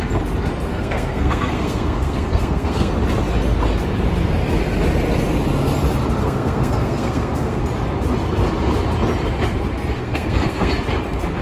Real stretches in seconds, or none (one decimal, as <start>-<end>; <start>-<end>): 0.0-0.7; 2.9-6.2; 7.6-10.0; 10.7-11.4